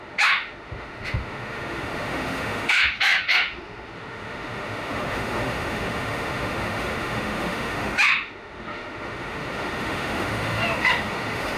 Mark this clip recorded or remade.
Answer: remade